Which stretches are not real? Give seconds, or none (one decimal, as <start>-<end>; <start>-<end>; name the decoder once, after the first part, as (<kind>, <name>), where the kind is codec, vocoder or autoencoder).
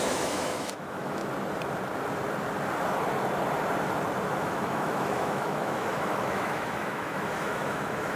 0.0-1.2 (autoencoder, DAC-VAE); 4.3-8.2